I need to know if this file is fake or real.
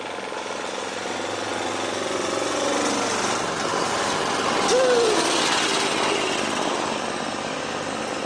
real